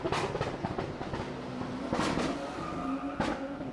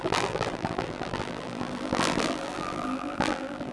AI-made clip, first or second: second